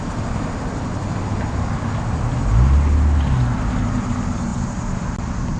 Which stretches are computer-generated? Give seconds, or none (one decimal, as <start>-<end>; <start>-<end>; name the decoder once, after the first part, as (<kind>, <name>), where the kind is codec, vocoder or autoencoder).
none